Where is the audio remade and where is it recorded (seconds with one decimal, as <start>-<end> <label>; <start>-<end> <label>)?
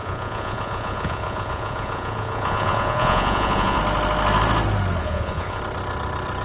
0.0-3.8 remade; 3.8-5.0 recorded; 5.0-5.6 remade; 5.6-6.4 recorded